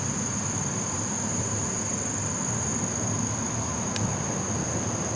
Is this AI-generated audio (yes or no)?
no